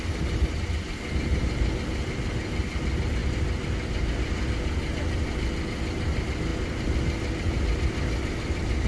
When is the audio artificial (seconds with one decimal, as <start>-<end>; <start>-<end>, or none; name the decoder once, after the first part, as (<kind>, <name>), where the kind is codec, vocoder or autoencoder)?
3.2-4.1 (vocoder, BigVGAN v2)